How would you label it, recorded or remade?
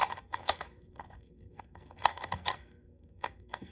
remade